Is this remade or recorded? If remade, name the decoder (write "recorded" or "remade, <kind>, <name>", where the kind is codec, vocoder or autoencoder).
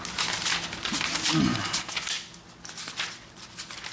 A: recorded